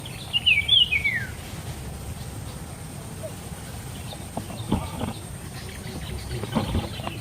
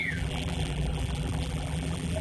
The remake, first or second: second